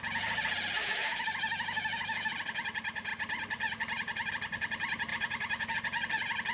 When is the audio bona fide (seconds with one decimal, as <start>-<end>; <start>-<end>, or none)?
0.0-0.8; 2.3-5.1; 5.7-6.5